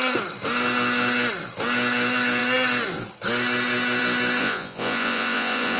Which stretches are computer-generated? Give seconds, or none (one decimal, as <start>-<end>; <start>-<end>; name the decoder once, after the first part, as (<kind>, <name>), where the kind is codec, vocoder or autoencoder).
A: 4.4-5.8 (vocoder, Vocos)

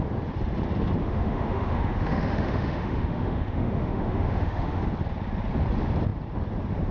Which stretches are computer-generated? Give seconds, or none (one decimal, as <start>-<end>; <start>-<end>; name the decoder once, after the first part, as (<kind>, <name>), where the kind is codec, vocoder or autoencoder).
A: 1.0-4.8 (autoencoder, DAC-VAE)

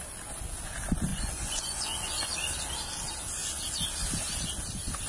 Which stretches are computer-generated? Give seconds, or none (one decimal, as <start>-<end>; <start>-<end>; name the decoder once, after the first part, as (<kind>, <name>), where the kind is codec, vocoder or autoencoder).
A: 1.1-2.3 (vocoder, Vocos)